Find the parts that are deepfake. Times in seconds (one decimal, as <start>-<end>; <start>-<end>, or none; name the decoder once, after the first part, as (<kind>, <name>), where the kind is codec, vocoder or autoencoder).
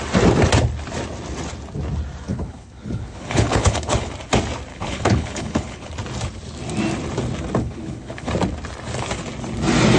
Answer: 2.3-4.1 (codec, HILCodec); 4.7-5.9; 7.6-8.3